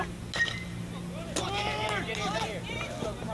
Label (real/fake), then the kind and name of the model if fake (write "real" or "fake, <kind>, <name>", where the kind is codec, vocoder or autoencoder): real